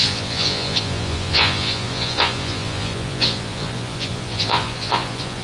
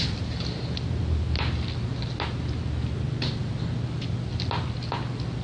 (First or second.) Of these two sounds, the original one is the second